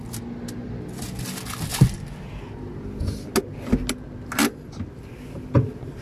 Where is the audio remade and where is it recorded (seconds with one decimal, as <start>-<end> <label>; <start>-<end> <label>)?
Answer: 0.0-6.0 recorded